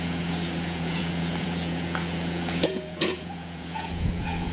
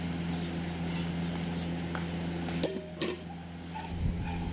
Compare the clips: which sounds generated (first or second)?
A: first